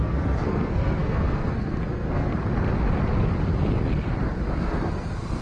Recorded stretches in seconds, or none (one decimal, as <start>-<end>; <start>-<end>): 2.3-4.6